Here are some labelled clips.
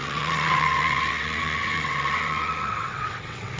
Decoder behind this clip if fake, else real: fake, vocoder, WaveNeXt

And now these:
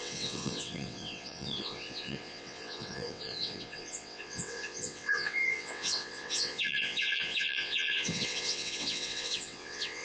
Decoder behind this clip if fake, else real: fake, vocoder, WaveNeXt